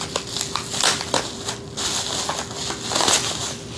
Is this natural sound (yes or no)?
yes